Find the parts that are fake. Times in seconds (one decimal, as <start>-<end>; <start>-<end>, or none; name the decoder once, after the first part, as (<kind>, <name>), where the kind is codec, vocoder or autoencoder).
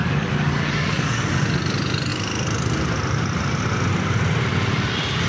0.0-1.3 (codec, DAC)